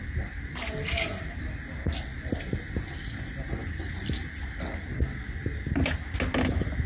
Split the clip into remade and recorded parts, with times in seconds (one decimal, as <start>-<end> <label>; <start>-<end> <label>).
0.0-6.9 recorded